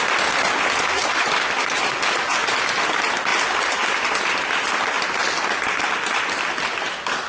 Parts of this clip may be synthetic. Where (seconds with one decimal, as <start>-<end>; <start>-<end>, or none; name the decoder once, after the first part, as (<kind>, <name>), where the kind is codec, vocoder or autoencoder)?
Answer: 3.3-4.5 (vocoder, BigVGAN v2); 5.2-6.8